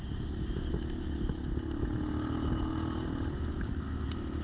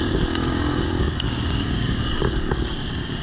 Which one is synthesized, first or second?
second